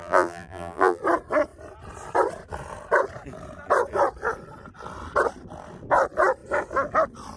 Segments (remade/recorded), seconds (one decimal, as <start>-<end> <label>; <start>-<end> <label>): 0.0-1.0 remade; 1.0-7.4 recorded